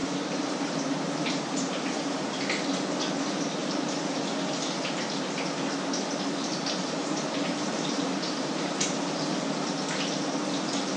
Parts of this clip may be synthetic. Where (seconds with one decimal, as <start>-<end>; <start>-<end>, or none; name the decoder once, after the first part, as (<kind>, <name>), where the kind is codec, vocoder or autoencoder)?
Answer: 0.0-2.4 (vocoder, BigVGAN v2); 3.6-4.2; 7.0-9.3